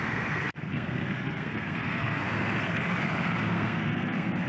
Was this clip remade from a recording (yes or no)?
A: yes